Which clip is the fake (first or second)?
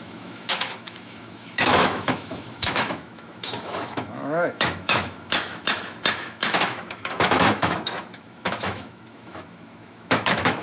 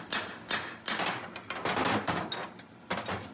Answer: first